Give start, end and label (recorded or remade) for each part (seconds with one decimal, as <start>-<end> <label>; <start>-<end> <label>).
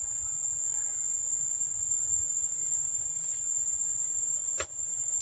0.0-2.3 recorded; 2.3-5.2 remade